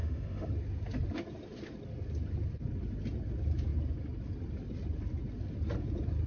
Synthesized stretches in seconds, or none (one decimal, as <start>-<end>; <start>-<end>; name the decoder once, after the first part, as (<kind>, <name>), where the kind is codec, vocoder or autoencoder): 0.0-0.5 (autoencoder, DAC-VAE)